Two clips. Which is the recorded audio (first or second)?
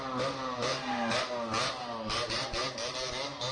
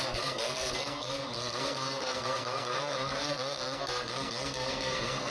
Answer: first